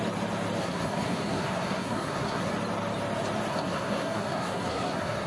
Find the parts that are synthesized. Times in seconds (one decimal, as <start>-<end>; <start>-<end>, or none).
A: 0.6-2.5; 3.5-5.3